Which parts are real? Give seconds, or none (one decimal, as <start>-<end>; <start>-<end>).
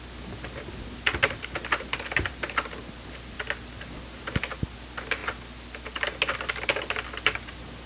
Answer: 0.0-7.9